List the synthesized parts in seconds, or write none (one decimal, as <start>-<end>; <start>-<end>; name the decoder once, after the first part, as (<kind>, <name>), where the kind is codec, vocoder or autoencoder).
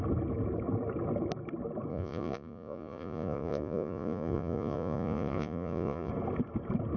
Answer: 1.9-6.1 (vocoder, Vocos)